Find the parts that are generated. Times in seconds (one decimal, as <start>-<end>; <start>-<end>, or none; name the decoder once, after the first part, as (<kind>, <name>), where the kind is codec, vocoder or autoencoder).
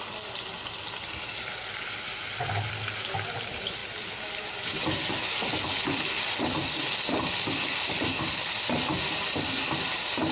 none